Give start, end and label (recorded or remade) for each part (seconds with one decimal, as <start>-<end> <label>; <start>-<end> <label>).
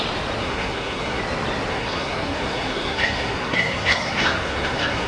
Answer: 0.0-0.4 recorded; 0.4-1.2 remade; 1.2-1.7 recorded; 1.7-5.1 remade